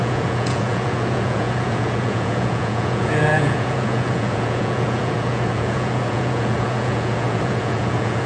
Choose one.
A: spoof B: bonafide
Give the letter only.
A